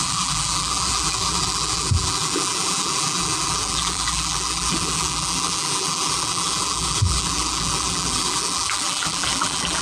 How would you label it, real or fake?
fake